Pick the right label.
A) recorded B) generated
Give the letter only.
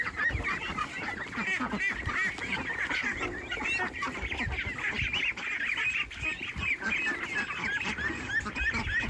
A